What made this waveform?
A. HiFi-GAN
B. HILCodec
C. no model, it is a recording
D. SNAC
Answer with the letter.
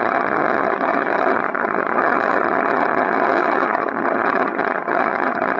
A